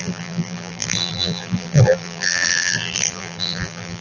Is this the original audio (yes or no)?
no